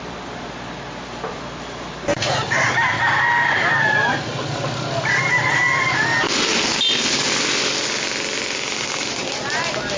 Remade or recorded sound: recorded